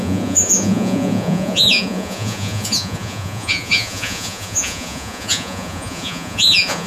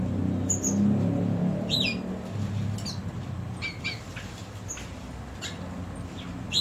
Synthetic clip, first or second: first